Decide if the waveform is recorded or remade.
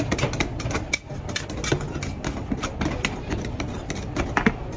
recorded